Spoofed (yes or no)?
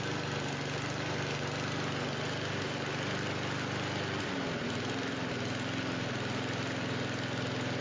no